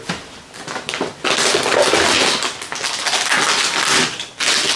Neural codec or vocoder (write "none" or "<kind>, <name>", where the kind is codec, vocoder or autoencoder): none